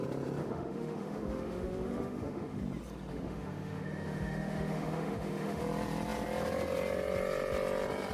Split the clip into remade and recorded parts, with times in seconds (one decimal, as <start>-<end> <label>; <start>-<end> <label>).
0.0-0.4 recorded; 0.4-2.6 remade; 2.6-3.1 recorded; 3.1-5.6 remade; 5.6-8.1 recorded